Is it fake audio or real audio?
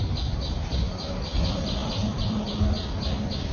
real